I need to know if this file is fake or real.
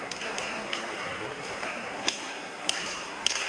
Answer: fake